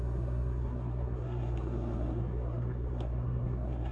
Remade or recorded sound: remade